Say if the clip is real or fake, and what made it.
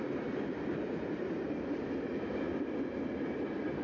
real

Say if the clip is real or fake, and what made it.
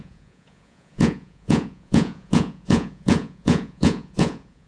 fake, vocoder, Vocos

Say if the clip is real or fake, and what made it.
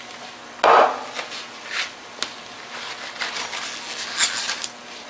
real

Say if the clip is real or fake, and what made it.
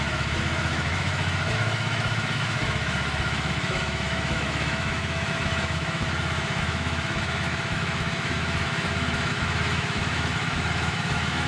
fake, autoencoder, DAC-VAE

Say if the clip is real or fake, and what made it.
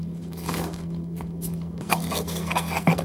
fake, codec, SNAC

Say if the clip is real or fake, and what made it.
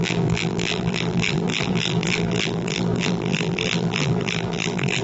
fake, vocoder, BigVGAN v2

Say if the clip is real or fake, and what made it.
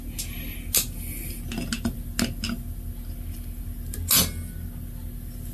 real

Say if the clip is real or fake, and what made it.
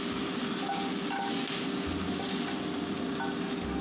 real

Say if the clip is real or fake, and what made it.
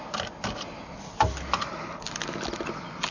real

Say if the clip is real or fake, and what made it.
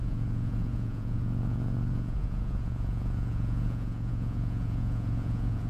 fake, vocoder, Vocos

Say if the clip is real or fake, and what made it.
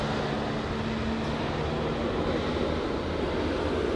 real